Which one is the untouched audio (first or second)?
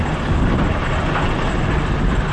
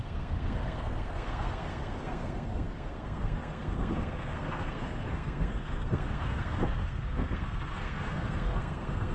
first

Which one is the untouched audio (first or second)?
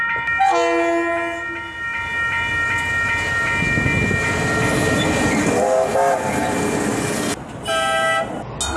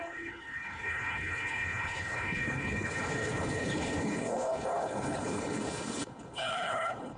first